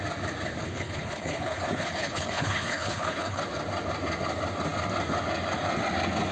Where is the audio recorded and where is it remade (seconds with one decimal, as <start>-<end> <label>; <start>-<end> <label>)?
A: 0.0-0.6 recorded; 0.6-3.4 remade; 3.4-6.3 recorded